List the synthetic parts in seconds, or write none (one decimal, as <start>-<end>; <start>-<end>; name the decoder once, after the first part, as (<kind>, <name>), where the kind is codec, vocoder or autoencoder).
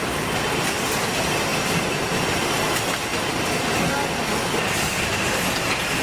none